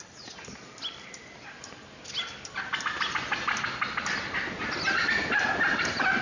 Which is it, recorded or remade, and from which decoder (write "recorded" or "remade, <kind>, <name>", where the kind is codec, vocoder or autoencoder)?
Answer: recorded